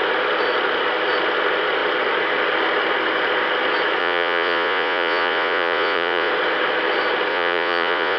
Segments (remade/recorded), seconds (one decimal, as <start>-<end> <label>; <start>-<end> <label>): 0.0-4.0 recorded; 4.0-6.3 remade; 6.3-7.3 recorded; 7.3-8.2 remade